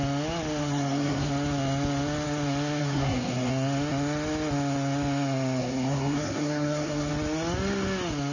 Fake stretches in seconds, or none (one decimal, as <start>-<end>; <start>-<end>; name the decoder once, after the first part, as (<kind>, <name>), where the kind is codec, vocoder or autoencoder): 0.6-1.3 (codec, SNAC); 2.8-3.5; 5.6-7.1